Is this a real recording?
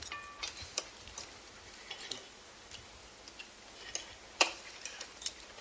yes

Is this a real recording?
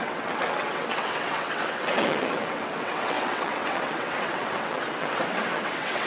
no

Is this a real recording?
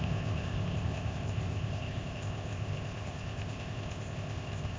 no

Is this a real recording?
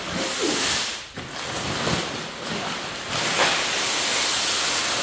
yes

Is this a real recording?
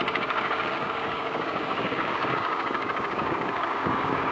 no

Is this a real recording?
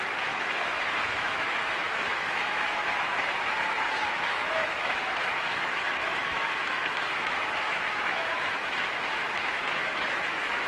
no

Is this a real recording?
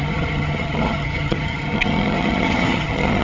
no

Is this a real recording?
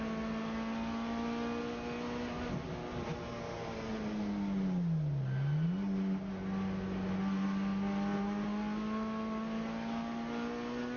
yes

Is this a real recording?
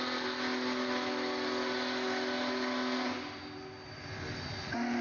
yes